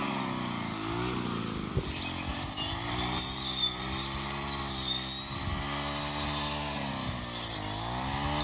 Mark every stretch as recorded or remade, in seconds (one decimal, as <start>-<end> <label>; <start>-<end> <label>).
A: 0.0-2.3 recorded; 2.3-4.6 remade; 4.6-8.4 recorded